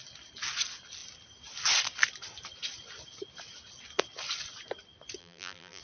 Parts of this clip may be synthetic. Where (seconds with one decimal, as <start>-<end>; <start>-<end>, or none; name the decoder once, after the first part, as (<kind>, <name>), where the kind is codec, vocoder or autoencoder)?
5.2-5.8 (vocoder, BigVGAN v2)